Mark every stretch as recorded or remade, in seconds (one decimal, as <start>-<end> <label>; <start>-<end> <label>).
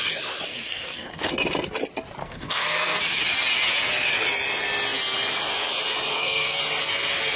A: 0.0-0.5 recorded; 0.5-1.3 remade; 1.3-2.2 recorded; 2.2-3.0 remade; 3.0-6.1 recorded; 6.1-6.6 remade; 6.6-7.4 recorded